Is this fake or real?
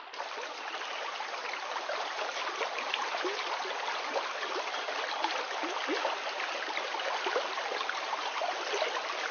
real